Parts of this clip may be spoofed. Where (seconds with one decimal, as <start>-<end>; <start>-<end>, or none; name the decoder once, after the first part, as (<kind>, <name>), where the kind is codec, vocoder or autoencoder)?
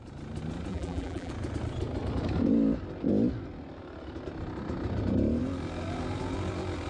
0.7-1.3 (vocoder, BigVGAN v2)